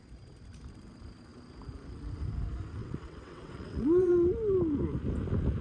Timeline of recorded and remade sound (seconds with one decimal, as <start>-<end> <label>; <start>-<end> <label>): 0.0-2.8 recorded; 2.8-4.1 remade; 4.1-5.6 recorded